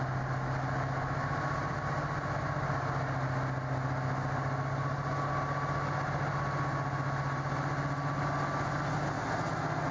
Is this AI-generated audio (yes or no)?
no